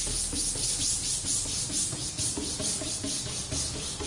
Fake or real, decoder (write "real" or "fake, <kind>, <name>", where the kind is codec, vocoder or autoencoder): real